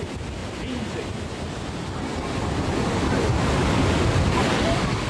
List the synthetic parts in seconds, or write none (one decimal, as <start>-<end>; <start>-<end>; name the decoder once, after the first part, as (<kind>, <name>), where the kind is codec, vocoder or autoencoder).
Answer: 3.6-5.1 (codec, DAC)